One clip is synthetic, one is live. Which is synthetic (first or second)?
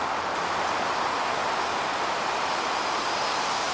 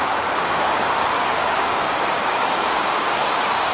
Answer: second